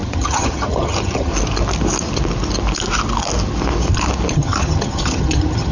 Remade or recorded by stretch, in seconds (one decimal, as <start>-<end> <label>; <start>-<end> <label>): 0.0-1.3 remade; 1.3-4.3 recorded; 4.3-5.7 remade